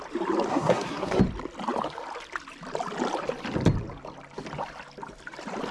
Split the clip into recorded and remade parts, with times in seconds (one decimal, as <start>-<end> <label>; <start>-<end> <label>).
0.0-0.5 recorded; 0.5-1.2 remade; 1.2-5.7 recorded